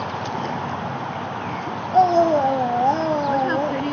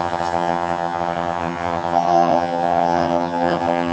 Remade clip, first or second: second